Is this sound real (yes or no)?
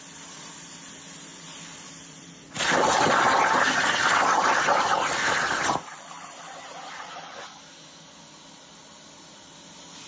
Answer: yes